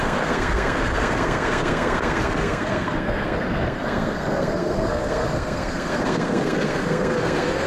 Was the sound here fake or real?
fake